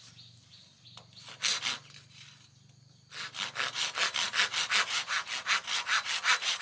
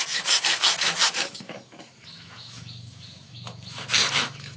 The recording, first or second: first